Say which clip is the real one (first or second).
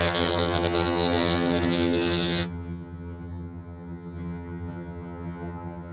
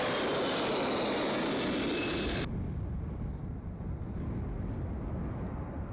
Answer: second